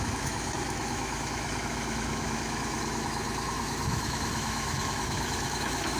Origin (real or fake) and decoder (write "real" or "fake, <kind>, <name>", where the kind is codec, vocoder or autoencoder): fake, autoencoder, DAC-VAE